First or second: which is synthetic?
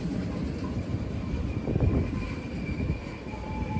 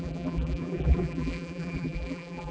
second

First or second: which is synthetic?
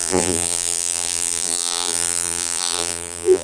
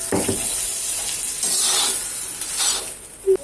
first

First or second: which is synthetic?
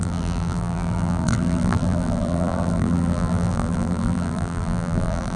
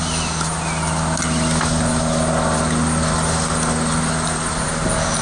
first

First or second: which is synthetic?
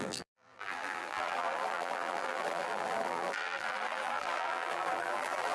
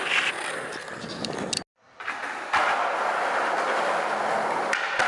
first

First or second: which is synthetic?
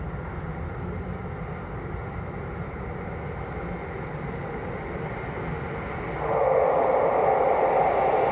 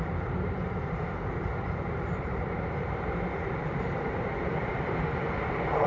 second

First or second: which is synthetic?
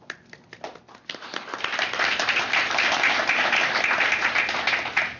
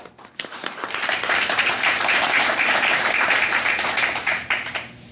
second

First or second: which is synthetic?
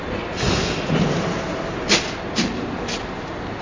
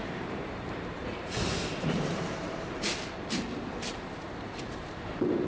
second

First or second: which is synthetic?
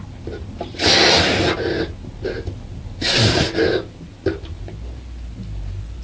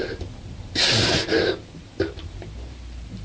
second